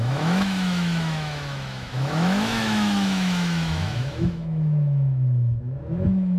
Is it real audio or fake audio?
fake